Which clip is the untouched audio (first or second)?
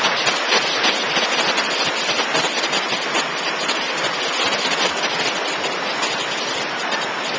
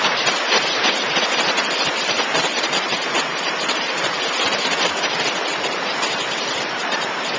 first